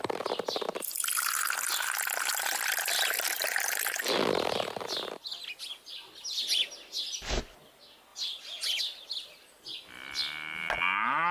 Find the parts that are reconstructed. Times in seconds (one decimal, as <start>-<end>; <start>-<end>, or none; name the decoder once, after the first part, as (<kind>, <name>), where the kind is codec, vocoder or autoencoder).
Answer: none